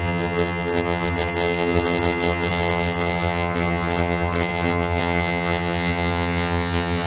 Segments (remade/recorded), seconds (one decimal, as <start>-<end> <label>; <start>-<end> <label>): 0.0-7.1 remade